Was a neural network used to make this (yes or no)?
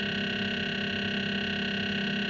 no